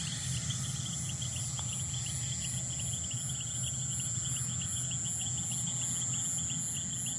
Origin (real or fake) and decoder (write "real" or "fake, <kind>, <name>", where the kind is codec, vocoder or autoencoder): real